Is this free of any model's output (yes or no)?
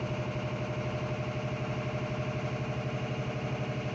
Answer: yes